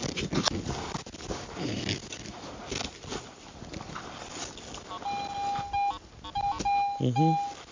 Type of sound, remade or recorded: recorded